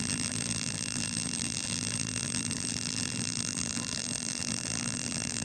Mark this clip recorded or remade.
remade